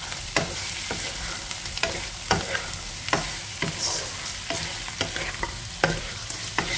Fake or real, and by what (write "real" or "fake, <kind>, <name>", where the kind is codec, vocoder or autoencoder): fake, vocoder, BigVGAN v2